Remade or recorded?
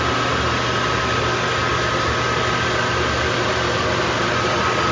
recorded